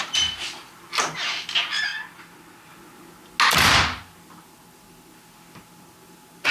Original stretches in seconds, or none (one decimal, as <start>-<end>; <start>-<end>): 0.0-6.5